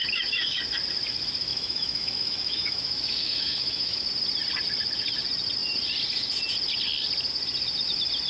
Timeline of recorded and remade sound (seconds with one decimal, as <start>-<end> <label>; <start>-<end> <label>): 0.0-0.6 remade; 0.6-1.5 recorded; 1.5-4.1 remade; 4.1-8.3 recorded

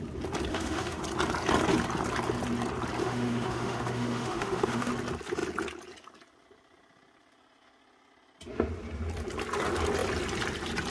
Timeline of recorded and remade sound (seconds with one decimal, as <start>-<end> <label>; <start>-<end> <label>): 0.0-0.5 recorded; 0.5-1.0 remade; 1.0-3.0 recorded; 3.0-4.9 remade; 4.9-10.9 recorded

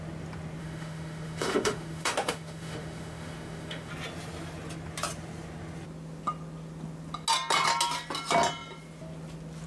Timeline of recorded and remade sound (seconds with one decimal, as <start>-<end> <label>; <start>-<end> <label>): 0.0-0.6 recorded; 0.6-3.9 remade; 3.9-9.7 recorded